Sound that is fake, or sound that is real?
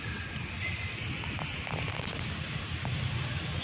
real